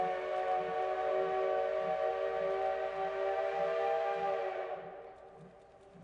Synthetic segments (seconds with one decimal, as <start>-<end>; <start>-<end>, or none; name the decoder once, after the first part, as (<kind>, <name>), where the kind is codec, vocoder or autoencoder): none